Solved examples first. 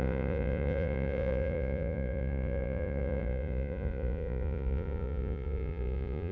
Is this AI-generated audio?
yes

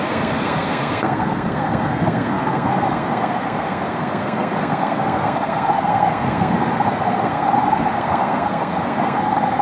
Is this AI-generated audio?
yes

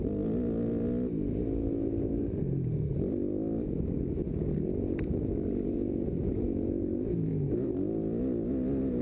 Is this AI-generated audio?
no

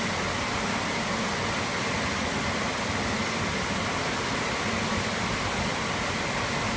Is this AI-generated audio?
no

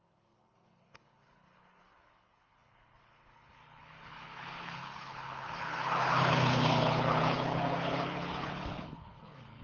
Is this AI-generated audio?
yes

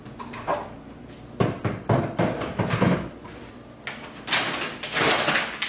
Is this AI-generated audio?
no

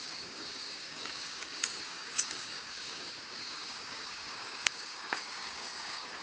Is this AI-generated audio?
yes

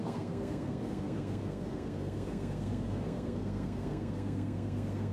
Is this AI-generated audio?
yes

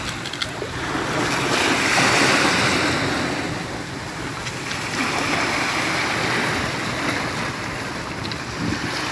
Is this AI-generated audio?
no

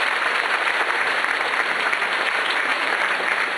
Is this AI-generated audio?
yes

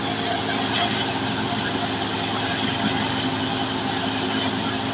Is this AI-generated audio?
no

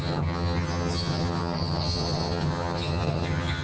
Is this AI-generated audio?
yes